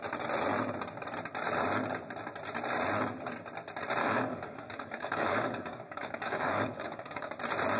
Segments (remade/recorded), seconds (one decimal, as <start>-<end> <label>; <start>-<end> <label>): 0.0-4.0 recorded; 4.0-7.3 remade; 7.3-7.8 recorded

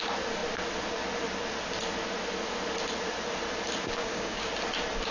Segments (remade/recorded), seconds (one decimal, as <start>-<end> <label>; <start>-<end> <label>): 0.0-4.0 recorded; 4.0-4.5 remade; 4.5-5.1 recorded

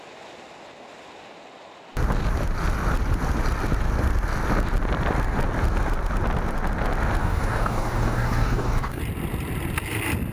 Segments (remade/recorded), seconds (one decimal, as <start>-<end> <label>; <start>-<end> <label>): 0.0-7.2 recorded; 7.2-9.0 remade; 9.0-10.3 recorded

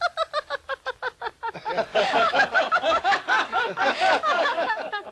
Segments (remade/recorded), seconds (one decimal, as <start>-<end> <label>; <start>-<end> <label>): 0.0-1.9 recorded; 1.9-5.1 remade

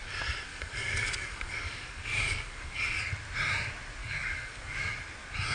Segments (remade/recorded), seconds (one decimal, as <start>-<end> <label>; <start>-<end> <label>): 0.0-0.5 recorded; 0.5-3.0 remade; 3.0-4.0 recorded; 4.0-4.9 remade; 4.9-5.5 recorded